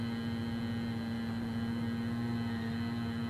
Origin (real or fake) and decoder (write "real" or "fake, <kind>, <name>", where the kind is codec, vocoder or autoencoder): real